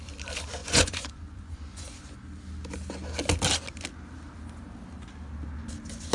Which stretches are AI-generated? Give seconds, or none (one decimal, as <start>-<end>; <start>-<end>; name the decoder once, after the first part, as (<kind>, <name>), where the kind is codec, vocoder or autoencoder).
0.6-2.0 (vocoder, Vocos)